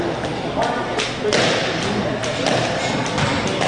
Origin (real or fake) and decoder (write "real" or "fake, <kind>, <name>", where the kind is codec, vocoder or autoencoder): real